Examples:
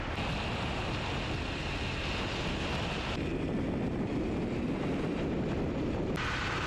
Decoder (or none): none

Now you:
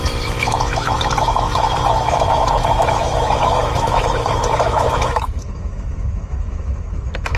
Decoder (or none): autoencoder, DAC-VAE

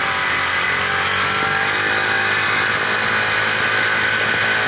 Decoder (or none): none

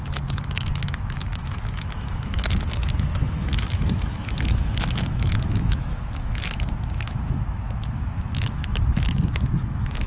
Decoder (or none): autoencoder, DAC-VAE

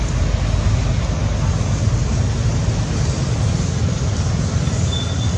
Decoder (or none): none